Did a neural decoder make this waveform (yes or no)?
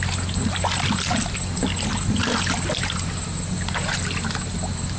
no